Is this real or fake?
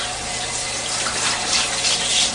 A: real